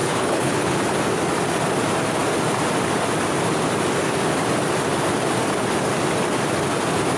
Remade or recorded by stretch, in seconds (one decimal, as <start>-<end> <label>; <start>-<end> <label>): 0.0-0.8 remade; 0.8-7.2 recorded

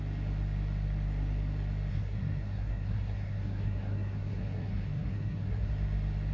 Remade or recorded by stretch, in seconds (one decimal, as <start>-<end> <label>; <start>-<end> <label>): 0.0-1.9 recorded; 1.9-5.7 remade; 5.7-6.3 recorded

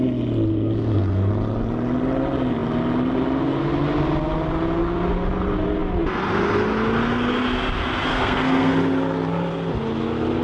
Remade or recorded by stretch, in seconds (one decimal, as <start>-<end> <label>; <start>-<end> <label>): 0.0-0.5 recorded; 0.5-1.3 remade; 1.3-8.1 recorded; 8.1-8.7 remade; 8.7-10.4 recorded

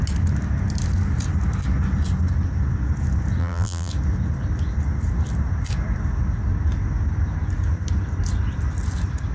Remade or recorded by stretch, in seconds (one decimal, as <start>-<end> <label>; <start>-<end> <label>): 0.0-3.4 recorded; 3.4-3.9 remade; 3.9-9.3 recorded